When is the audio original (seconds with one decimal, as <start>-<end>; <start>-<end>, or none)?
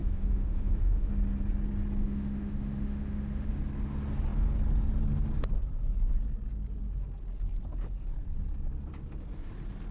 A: 1.1-2.0; 3.5-9.9